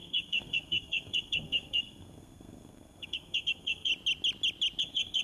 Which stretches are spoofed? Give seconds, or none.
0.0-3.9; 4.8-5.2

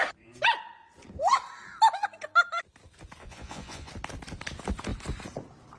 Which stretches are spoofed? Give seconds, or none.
3.2-3.9

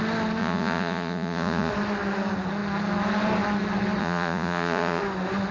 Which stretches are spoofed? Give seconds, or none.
0.4-1.7; 4.0-5.0